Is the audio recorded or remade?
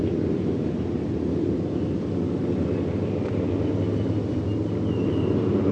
recorded